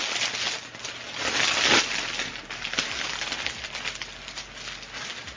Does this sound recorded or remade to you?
recorded